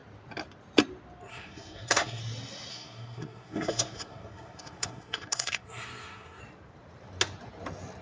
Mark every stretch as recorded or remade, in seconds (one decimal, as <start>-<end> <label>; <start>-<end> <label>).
0.0-1.3 recorded; 1.3-2.2 remade; 2.2-2.7 recorded; 2.7-6.4 remade; 6.4-8.0 recorded